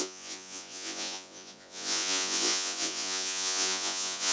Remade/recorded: remade